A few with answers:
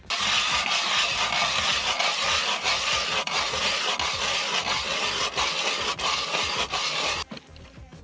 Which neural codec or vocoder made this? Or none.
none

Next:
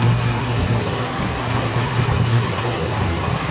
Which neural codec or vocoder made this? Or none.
codec, SNAC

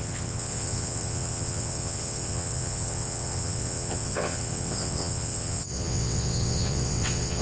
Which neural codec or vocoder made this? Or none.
vocoder, WaveNeXt